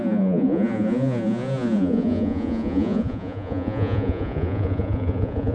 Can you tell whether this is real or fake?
fake